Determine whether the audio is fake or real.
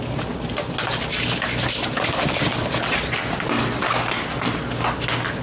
real